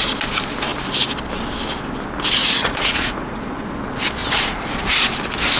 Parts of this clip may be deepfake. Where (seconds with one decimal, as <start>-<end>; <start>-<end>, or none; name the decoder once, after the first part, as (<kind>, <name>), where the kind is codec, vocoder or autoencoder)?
2.4-3.7 (vocoder, Vocos); 4.2-4.9